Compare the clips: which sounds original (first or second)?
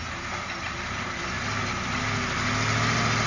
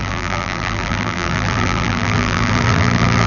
first